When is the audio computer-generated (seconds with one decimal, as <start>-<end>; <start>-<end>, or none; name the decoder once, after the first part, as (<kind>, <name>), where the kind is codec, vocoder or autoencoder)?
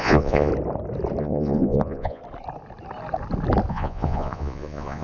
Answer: 0.0-0.5 (vocoder, Vocos); 1.2-2.2; 3.7-5.0